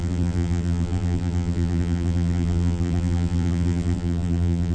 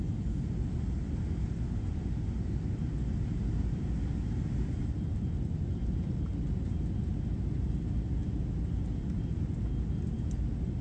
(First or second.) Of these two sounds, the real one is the second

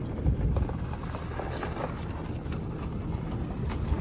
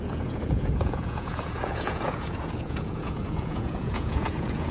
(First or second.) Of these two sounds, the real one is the first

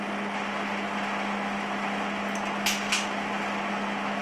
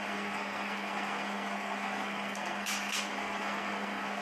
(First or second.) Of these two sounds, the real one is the first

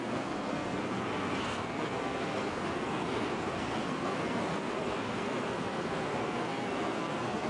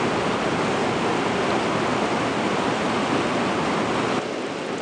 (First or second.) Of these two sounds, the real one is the second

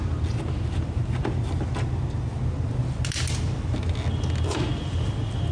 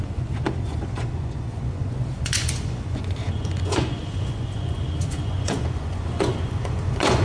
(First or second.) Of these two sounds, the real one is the first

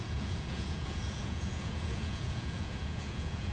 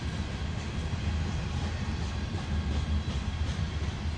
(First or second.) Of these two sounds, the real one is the second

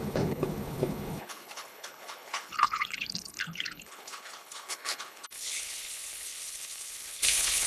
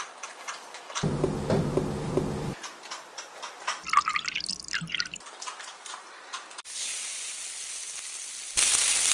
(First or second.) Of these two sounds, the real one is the second